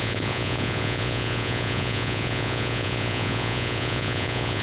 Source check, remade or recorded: remade